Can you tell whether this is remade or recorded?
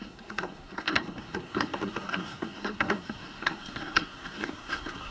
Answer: remade